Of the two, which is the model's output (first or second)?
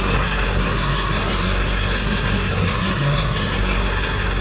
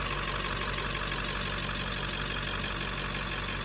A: first